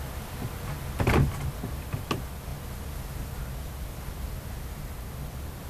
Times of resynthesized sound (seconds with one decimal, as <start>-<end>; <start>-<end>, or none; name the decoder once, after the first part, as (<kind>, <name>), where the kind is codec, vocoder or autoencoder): none